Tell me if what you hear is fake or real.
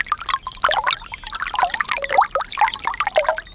real